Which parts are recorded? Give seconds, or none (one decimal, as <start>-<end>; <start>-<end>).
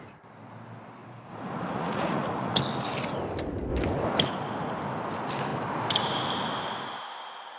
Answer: 0.0-1.0; 2.6-7.6